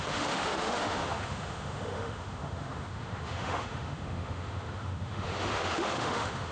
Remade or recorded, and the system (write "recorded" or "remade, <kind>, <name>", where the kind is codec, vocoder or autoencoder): remade, autoencoder, DAC-VAE